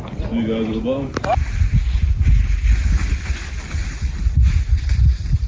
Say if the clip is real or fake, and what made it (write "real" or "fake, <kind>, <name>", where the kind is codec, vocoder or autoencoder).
real